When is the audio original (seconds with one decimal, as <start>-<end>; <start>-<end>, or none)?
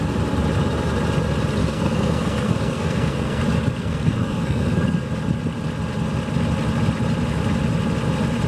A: 0.0-1.6; 3.4-3.8; 5.1-8.5